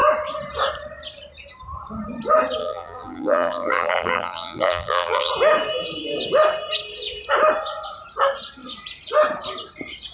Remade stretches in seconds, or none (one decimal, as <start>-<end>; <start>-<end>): 2.6-5.3